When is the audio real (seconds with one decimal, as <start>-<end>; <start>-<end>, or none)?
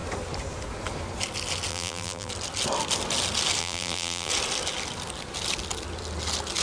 0.0-1.7; 2.3-3.6; 4.3-6.6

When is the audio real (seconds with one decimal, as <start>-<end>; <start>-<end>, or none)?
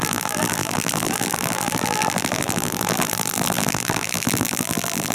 none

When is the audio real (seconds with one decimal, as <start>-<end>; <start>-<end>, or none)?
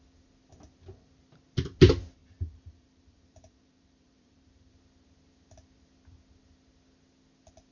0.0-2.2; 4.7-7.7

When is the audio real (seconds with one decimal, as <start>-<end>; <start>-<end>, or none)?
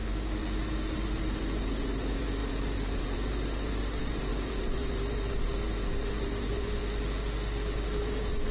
6.8-8.0